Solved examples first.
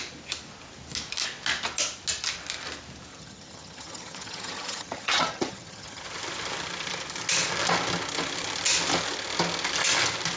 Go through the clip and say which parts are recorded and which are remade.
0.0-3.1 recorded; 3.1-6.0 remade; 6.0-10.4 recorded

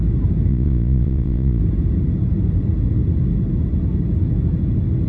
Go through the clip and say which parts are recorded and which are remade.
0.0-0.5 recorded; 0.5-1.6 remade; 1.6-5.1 recorded

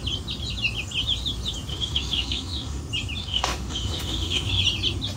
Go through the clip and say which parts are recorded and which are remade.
0.0-1.7 recorded; 1.7-2.8 remade; 2.8-3.2 recorded; 3.2-4.6 remade; 4.6-5.2 recorded

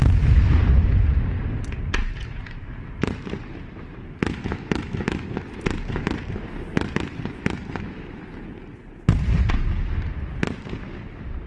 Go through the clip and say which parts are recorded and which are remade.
0.0-4.2 recorded; 4.2-5.5 remade; 5.5-11.5 recorded

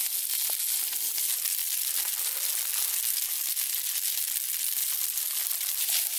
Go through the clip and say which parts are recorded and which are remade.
0.0-1.6 recorded; 1.6-2.1 remade; 2.1-6.2 recorded